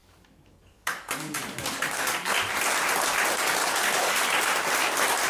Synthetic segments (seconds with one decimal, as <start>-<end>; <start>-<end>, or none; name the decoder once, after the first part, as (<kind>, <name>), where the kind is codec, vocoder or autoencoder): 0.0-2.3 (codec, DAC); 3.6-4.2